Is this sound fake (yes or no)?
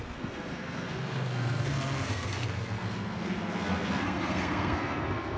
yes